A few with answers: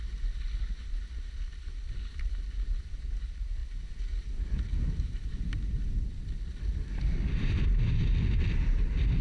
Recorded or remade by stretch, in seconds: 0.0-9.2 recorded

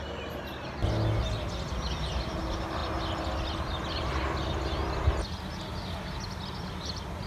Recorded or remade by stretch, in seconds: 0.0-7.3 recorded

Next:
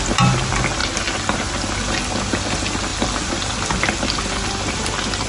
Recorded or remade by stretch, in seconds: 0.0-5.3 recorded

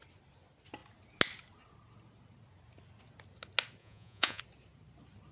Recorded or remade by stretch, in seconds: 0.0-3.8 recorded; 3.8-4.4 remade; 4.4-5.3 recorded

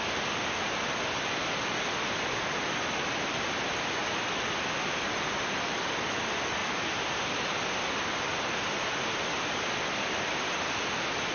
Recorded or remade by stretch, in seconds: 0.0-11.3 recorded

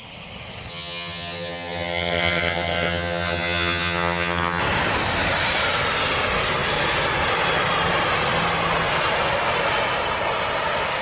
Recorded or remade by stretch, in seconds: 0.0-0.7 recorded; 0.7-4.6 remade; 4.6-11.0 recorded